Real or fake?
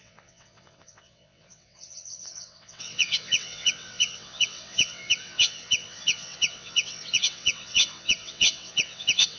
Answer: fake